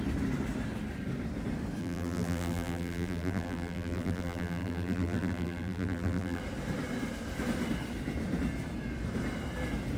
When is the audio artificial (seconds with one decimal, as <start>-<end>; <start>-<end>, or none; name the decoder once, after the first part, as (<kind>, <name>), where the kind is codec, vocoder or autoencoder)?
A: 1.8-6.4 (vocoder, BigVGAN v2)